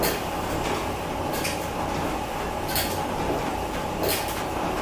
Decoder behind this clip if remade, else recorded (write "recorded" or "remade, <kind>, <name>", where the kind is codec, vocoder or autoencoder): recorded